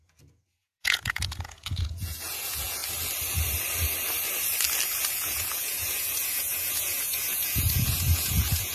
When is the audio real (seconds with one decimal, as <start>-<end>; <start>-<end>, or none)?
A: 2.8-5.1